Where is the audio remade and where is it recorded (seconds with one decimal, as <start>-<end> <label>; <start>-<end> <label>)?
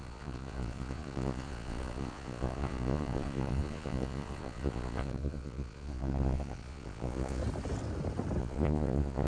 0.0-7.4 remade; 7.4-8.4 recorded; 8.4-9.3 remade